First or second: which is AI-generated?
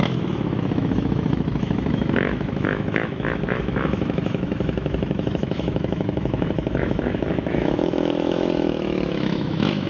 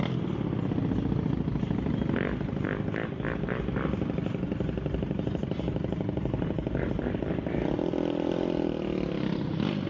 first